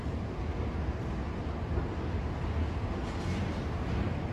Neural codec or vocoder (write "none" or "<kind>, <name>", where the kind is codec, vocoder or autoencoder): none